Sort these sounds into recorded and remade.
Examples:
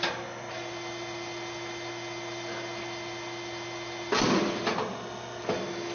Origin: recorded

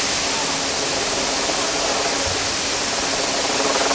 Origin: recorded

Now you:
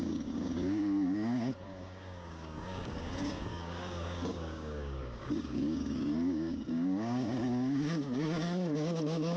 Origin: remade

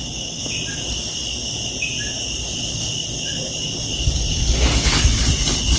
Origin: recorded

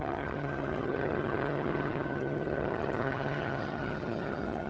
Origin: remade